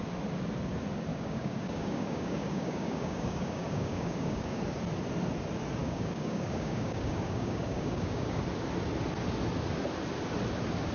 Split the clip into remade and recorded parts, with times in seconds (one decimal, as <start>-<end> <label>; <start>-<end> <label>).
0.0-1.1 recorded; 1.1-4.6 remade; 4.6-5.8 recorded; 5.8-8.4 remade; 8.4-10.9 recorded